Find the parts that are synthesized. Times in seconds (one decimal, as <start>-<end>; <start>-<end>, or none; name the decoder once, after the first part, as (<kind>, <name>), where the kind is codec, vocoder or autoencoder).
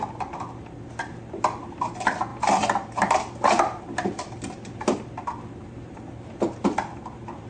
none